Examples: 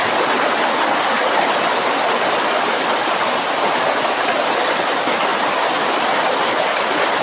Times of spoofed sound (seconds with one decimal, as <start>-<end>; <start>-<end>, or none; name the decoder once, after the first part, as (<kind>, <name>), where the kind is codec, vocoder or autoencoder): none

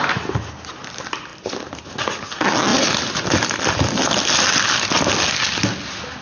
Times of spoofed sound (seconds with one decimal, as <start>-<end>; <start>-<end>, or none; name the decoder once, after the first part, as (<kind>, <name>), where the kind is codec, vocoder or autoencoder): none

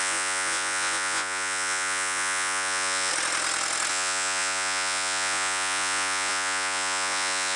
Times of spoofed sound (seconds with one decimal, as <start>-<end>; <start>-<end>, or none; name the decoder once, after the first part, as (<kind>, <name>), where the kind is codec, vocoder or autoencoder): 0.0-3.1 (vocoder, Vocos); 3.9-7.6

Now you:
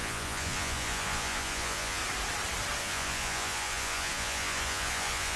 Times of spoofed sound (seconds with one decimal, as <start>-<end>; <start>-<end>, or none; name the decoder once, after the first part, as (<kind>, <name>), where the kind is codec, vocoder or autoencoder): 0.0-2.0 (vocoder, Vocos); 2.8-5.4

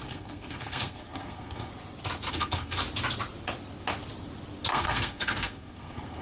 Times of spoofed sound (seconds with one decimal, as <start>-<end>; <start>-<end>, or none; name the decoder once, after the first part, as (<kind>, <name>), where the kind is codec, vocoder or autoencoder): 0.0-1.7 (codec, SNAC); 2.3-2.8; 4.7-6.2

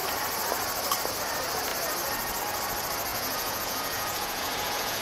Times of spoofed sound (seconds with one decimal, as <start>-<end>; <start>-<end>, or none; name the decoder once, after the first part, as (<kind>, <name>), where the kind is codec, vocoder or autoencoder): 3.1-5.0 (vocoder, Vocos)

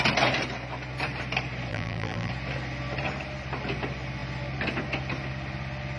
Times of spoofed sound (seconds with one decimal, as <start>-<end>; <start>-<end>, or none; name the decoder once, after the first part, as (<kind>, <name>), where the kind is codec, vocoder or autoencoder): 1.7-2.3 (vocoder, BigVGAN v2)

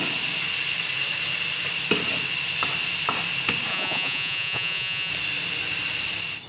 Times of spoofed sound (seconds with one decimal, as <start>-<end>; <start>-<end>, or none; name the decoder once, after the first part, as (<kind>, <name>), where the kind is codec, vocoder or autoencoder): 3.7-5.1 (vocoder, Vocos)